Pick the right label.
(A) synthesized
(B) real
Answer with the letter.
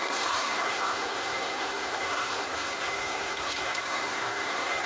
A